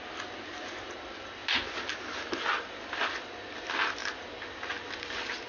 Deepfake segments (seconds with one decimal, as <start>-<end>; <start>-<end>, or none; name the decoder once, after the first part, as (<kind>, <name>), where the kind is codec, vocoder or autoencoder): none